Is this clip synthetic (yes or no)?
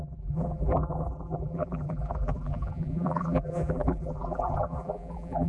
yes